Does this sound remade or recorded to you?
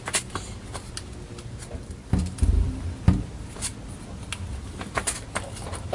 recorded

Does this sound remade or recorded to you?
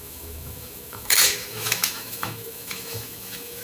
remade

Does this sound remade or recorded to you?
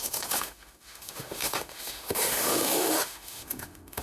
remade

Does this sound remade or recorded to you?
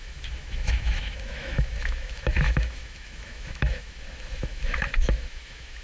remade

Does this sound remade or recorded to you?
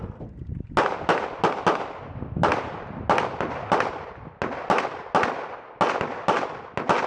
recorded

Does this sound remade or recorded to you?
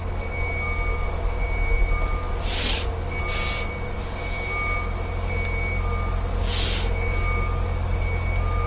recorded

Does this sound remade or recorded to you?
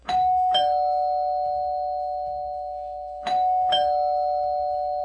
remade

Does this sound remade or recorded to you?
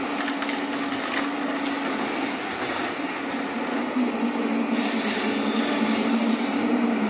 recorded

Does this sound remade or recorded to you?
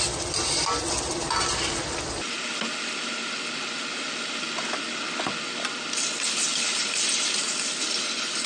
recorded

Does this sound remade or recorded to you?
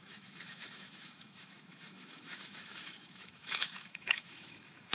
remade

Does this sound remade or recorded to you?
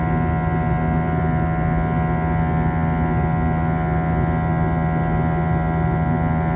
recorded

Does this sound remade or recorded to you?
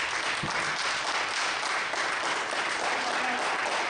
recorded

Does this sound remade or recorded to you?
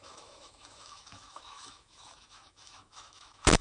remade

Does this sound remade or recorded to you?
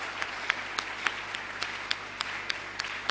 recorded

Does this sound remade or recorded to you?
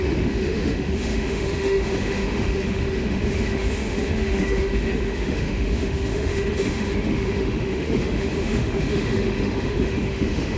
remade